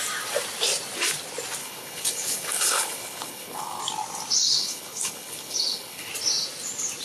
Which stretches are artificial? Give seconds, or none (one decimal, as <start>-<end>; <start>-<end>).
1.6-3.8; 4.4-6.1